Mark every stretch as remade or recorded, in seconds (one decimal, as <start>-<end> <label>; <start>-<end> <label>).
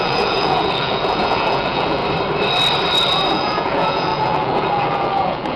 0.0-2.0 remade; 2.0-3.3 recorded; 3.3-5.6 remade